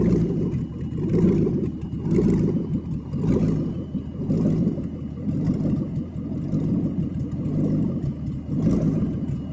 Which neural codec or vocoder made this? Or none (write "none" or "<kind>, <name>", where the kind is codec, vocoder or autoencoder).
none